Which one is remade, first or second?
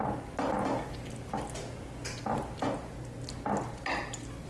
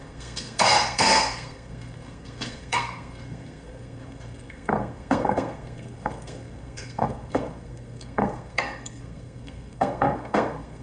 second